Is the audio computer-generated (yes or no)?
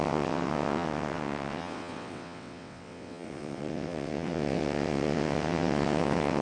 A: yes